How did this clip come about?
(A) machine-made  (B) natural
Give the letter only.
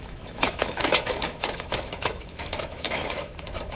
A